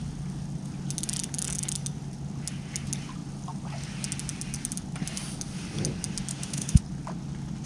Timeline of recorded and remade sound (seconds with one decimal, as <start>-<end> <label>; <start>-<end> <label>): 0.0-6.3 recorded; 6.3-6.8 remade; 6.8-7.7 recorded